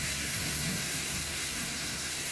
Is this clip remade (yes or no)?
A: yes